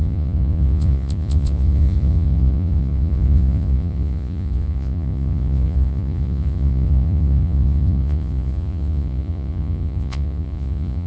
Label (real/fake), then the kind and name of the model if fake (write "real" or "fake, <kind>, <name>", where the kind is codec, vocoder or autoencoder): fake, vocoder, Vocos